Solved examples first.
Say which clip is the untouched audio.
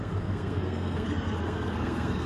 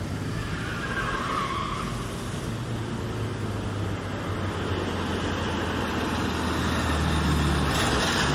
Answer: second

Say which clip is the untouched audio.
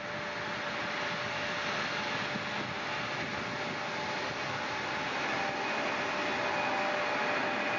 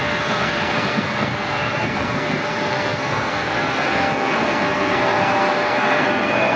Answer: first